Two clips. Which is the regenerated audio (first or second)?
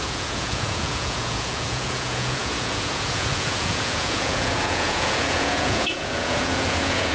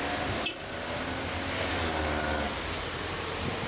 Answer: first